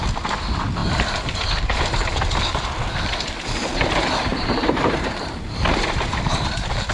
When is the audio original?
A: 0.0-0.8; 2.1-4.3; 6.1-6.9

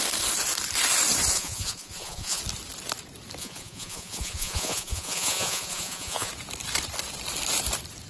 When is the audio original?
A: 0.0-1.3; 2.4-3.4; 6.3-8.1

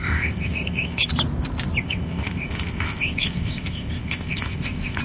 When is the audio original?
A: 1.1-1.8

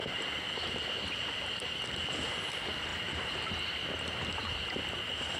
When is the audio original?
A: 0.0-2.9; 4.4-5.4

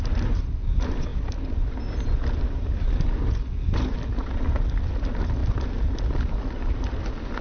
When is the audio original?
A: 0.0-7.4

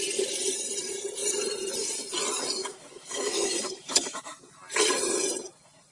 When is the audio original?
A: 0.0-2.6; 4.4-5.9

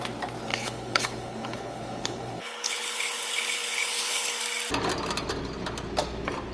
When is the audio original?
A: 0.0-0.5; 4.4-6.5

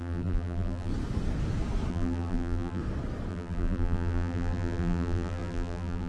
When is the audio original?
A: 0.9-1.9; 2.8-3.3